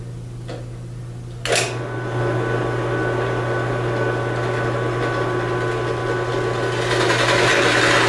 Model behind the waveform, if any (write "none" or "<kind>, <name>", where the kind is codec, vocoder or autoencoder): none